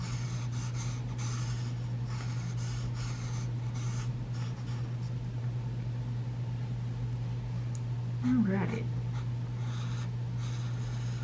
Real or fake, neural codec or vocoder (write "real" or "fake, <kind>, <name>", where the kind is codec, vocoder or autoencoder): real